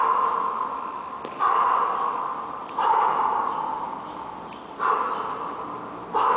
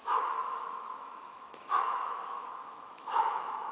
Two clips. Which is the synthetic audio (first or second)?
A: second